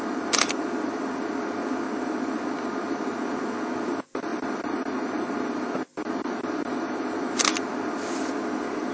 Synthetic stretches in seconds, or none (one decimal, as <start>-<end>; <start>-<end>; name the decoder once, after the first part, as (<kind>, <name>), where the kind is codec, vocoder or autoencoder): none